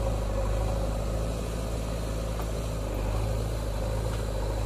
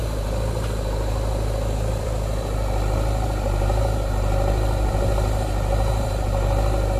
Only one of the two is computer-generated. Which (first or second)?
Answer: second